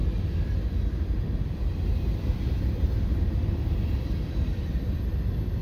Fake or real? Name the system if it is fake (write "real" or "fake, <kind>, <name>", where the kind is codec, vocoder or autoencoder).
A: real